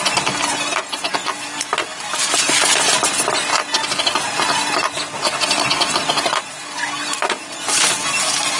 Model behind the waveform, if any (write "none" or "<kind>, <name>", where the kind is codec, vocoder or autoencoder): none